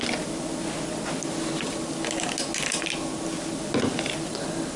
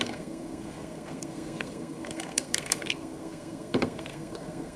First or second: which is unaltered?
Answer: first